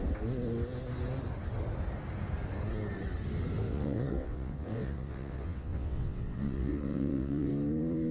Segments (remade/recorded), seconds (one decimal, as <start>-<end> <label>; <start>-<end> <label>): 0.0-3.7 recorded; 3.7-7.5 remade; 7.5-8.1 recorded

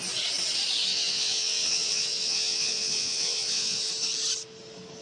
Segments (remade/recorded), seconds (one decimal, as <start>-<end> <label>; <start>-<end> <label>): 0.0-0.9 recorded; 0.9-3.9 remade; 3.9-5.0 recorded

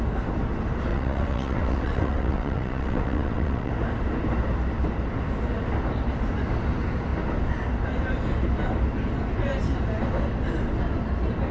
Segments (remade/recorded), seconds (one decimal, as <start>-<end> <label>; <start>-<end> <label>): 0.0-0.9 recorded; 0.9-3.7 remade; 3.7-11.5 recorded

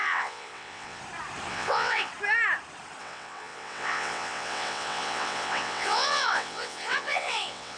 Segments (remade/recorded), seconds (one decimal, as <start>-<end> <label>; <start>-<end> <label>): 0.0-1.0 remade; 1.0-1.5 recorded; 1.5-2.1 remade; 2.1-3.0 recorded; 3.0-7.8 remade

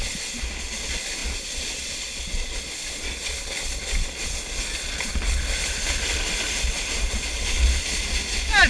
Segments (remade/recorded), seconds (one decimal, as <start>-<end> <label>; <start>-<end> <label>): 0.0-8.7 recorded

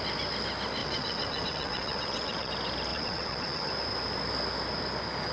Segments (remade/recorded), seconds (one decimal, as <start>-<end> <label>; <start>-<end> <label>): 0.0-0.8 recorded; 0.8-2.5 remade; 2.5-2.9 recorded; 2.9-3.7 remade; 3.7-5.3 recorded